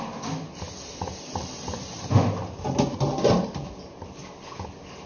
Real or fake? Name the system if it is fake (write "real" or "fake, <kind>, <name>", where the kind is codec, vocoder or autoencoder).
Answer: real